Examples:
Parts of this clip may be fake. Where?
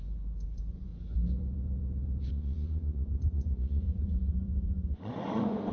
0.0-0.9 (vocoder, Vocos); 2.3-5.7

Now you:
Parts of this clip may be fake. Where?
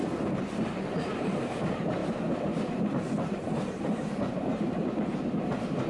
0.0-5.9 (vocoder, BigVGAN v2)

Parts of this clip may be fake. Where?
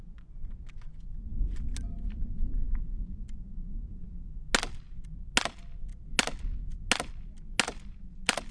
none